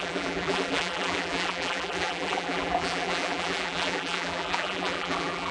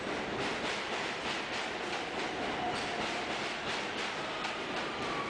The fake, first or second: first